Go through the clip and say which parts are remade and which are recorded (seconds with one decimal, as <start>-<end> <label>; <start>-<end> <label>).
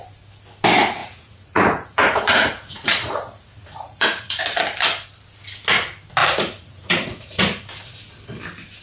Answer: 0.0-1.0 recorded; 1.0-4.4 remade; 4.4-6.2 recorded; 6.2-7.4 remade; 7.4-8.8 recorded